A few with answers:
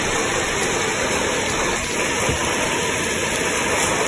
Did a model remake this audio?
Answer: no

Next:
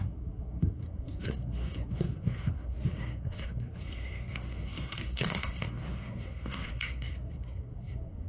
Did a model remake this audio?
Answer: yes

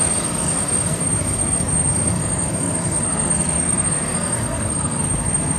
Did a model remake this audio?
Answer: yes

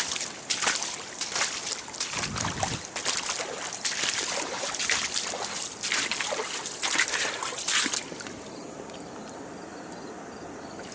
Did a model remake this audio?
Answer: no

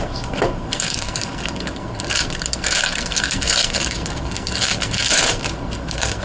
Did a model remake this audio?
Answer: yes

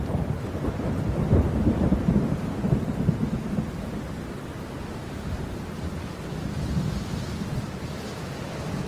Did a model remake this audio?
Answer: no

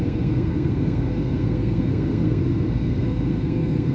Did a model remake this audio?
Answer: yes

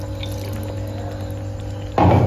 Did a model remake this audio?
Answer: no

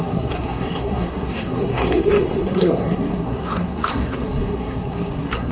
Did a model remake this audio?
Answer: yes